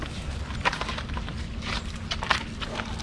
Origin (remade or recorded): recorded